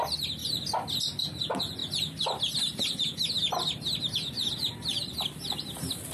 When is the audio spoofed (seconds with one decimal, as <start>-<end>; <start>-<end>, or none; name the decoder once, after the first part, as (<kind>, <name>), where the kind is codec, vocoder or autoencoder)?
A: none